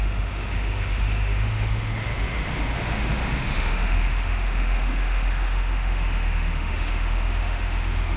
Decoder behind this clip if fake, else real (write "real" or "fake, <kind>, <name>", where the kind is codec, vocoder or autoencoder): fake, autoencoder, DAC-VAE